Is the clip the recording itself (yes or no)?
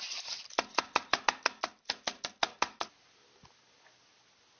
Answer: yes